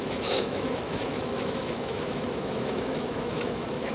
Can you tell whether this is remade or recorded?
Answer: remade